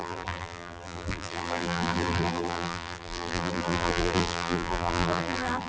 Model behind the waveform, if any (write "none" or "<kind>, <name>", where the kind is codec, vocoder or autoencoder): vocoder, BigVGAN v2